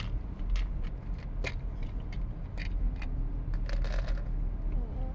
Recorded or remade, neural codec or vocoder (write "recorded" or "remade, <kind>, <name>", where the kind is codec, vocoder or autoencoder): recorded